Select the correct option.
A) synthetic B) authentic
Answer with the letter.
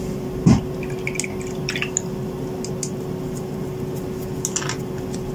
B